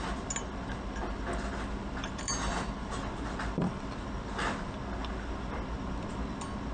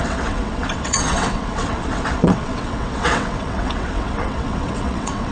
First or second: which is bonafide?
first